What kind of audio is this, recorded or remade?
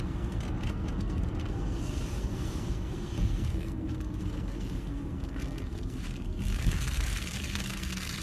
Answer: remade